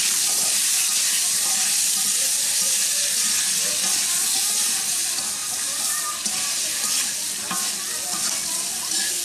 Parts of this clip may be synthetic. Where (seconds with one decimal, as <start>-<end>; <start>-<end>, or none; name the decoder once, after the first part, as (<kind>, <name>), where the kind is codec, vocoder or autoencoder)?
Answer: 5.4-6.8 (vocoder, BigVGAN v2)